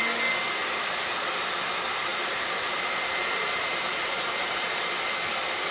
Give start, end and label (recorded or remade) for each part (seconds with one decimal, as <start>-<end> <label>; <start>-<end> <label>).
0.0-0.6 recorded; 0.6-1.1 remade; 1.1-2.1 recorded; 2.1-4.8 remade; 4.8-5.7 recorded